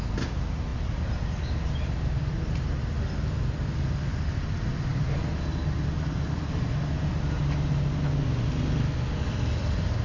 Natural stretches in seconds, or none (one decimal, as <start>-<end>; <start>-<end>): 0.0-10.0